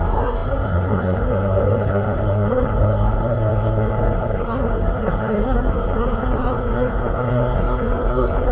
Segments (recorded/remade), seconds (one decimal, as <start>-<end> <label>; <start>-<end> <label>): 0.0-8.5 remade